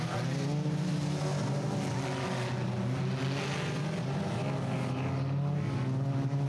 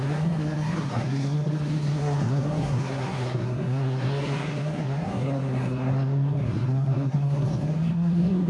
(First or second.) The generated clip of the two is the second